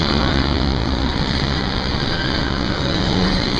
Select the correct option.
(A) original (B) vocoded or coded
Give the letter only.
B